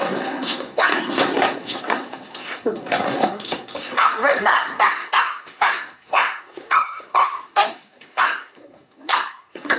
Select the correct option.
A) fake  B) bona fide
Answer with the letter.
A